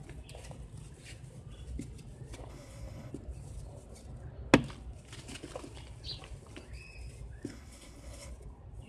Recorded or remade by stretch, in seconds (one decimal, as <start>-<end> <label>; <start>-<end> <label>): 0.0-2.5 recorded; 2.5-3.1 remade; 3.1-7.5 recorded; 7.5-8.3 remade; 8.3-8.9 recorded